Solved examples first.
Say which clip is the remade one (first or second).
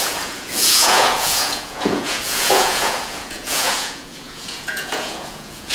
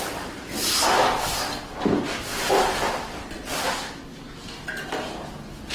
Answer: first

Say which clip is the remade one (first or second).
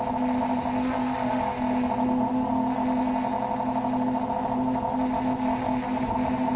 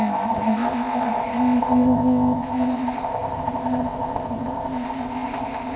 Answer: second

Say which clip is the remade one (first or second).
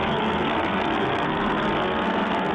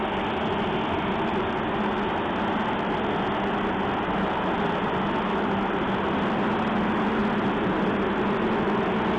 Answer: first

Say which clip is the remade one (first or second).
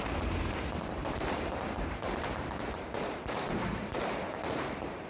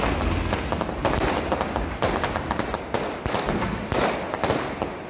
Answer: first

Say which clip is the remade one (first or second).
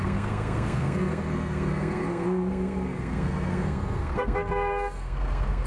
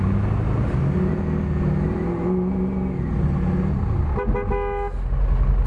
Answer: first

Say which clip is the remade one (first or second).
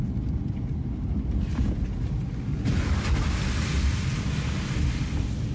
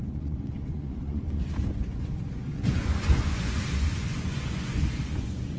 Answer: second